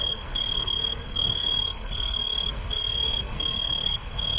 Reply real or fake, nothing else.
fake